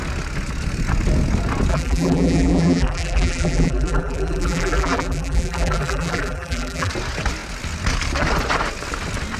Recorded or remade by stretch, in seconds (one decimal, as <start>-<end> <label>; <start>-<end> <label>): 0.0-1.7 recorded; 1.7-6.9 remade; 6.9-9.4 recorded

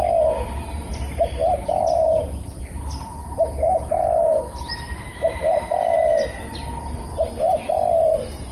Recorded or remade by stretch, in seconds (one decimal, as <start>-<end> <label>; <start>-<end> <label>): 0.0-0.9 recorded; 0.9-2.8 remade; 2.8-3.2 recorded; 3.2-4.0 remade; 4.0-5.1 recorded; 5.1-6.8 remade; 6.8-8.5 recorded

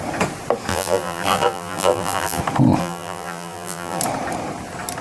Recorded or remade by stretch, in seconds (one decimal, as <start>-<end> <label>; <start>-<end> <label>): 0.0-0.7 recorded; 0.7-2.4 remade; 2.4-2.8 recorded; 2.8-4.0 remade; 4.0-5.0 recorded

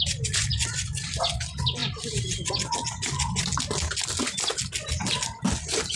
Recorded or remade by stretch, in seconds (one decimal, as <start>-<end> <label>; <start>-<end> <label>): 0.0-6.0 recorded

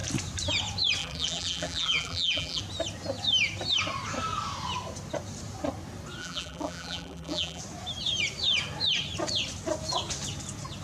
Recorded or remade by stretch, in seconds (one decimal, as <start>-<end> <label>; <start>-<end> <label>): 0.0-1.0 recorded; 1.0-2.6 remade; 2.6-6.2 recorded; 6.2-7.6 remade; 7.6-10.8 recorded

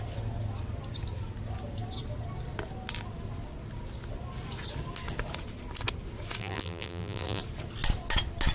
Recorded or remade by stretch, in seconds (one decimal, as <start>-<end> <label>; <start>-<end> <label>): 0.0-6.4 recorded; 6.4-7.4 remade; 7.4-8.5 recorded

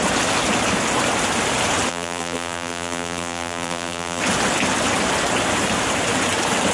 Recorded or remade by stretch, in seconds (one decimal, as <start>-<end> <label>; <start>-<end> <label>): 0.0-1.9 recorded; 1.9-4.2 remade; 4.2-6.7 recorded

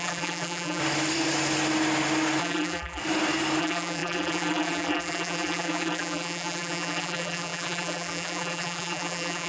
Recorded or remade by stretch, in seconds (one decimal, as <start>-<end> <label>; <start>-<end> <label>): 0.0-0.8 remade; 0.8-2.4 recorded; 2.4-3.0 remade; 3.0-3.6 recorded; 3.6-9.5 remade